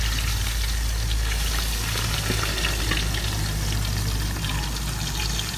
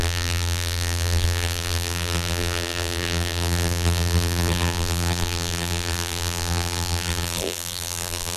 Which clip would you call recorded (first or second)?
first